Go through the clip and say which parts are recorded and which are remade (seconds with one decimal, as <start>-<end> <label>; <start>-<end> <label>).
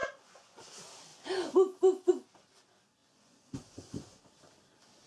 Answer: 0.0-0.6 remade; 0.6-1.1 recorded; 1.1-2.1 remade; 2.1-3.0 recorded; 3.0-4.2 remade; 4.2-5.1 recorded